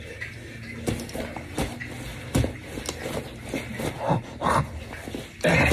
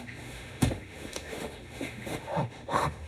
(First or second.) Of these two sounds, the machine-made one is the second